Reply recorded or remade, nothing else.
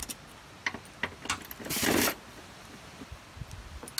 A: recorded